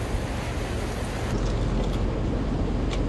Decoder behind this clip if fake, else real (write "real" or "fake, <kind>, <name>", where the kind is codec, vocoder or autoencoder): real